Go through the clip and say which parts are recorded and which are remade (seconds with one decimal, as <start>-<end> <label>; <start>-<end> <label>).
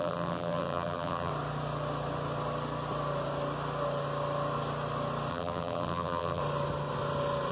0.0-1.3 remade; 1.3-5.3 recorded; 5.3-6.4 remade; 6.4-7.5 recorded